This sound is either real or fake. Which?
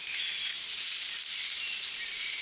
fake